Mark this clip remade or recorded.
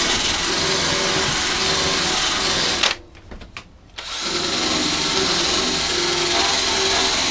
recorded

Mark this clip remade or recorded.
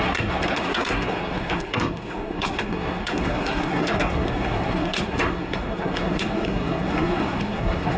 remade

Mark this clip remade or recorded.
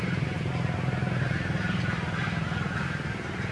recorded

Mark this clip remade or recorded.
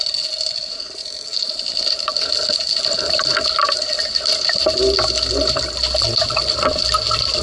recorded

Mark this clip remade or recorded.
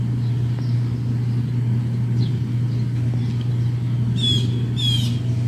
recorded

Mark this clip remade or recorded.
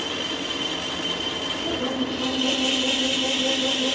recorded